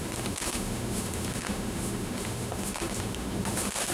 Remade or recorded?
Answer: remade